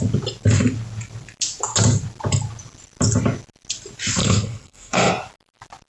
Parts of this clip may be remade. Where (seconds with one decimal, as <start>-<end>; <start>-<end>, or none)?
4.2-5.1